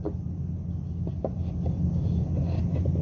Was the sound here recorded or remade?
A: recorded